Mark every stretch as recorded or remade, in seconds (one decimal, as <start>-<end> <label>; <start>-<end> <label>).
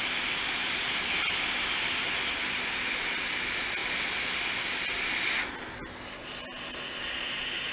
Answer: 0.0-7.7 recorded